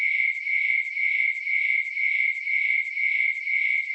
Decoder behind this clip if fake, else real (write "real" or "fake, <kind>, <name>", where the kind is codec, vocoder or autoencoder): real